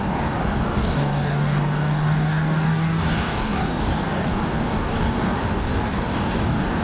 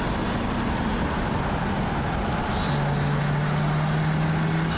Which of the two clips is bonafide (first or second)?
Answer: second